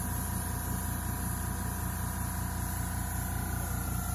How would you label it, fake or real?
real